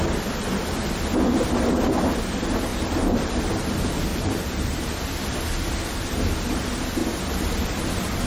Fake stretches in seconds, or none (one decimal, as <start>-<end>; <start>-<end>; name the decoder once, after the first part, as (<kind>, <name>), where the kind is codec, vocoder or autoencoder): 2.7-3.4 (vocoder, BigVGAN v2); 4.1-4.8